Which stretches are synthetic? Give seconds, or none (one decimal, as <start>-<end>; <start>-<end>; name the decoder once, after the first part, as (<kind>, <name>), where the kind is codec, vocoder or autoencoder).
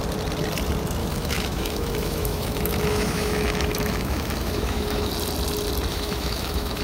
1.0-5.1 (autoencoder, DAC-VAE); 5.9-6.8